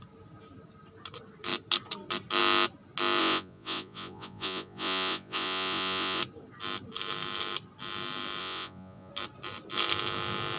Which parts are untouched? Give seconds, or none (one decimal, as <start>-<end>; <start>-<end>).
0.0-3.2; 6.2-8.4; 9.1-10.6